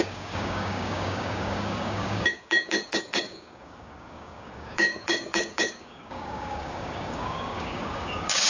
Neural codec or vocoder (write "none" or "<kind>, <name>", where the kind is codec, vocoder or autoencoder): codec, DAC